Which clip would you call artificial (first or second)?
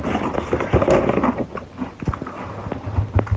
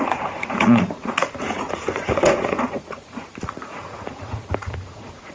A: second